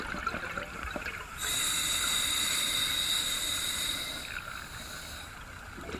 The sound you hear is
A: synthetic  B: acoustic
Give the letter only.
B